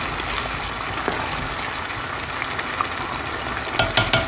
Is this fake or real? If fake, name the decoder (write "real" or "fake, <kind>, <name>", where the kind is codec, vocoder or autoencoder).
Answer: real